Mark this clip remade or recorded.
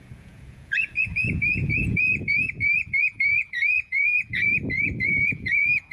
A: remade